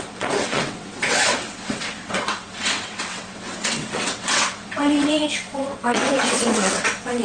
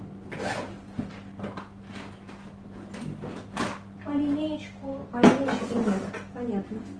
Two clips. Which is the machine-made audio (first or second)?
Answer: first